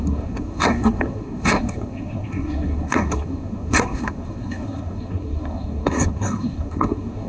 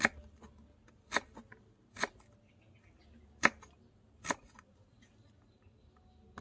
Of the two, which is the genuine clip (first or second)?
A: second